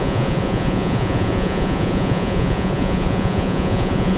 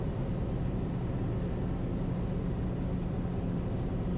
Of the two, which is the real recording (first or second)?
second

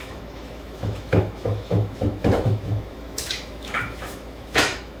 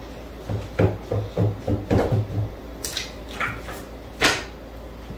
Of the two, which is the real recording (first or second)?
second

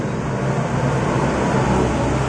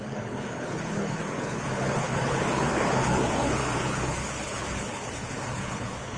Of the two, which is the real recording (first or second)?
first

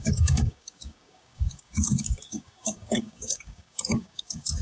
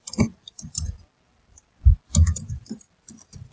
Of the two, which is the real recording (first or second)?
second